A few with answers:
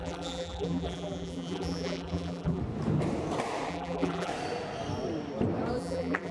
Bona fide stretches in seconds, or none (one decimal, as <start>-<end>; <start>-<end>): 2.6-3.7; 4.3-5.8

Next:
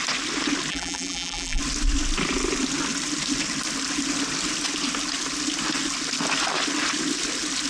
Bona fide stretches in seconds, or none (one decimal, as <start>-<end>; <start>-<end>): 0.0-0.7; 1.6-7.7

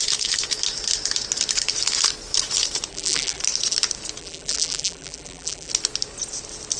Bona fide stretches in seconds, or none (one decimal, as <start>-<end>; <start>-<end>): 0.0-2.9; 3.4-4.2; 5.7-6.8

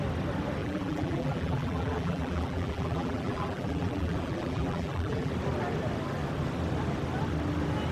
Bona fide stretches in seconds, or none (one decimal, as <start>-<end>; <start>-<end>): 0.0-0.6; 5.3-7.9

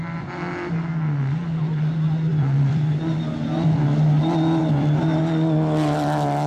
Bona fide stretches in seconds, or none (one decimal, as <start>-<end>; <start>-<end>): 0.0-2.3; 3.1-4.6; 5.2-6.5

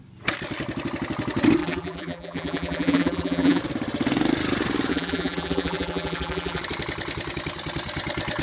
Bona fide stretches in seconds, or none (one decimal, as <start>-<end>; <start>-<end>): 0.0-1.6; 3.6-4.9; 6.6-8.4

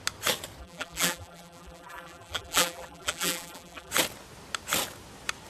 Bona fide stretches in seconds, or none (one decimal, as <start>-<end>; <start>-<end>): 0.0-0.6; 3.9-5.5